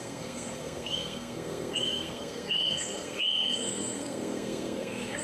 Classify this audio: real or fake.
fake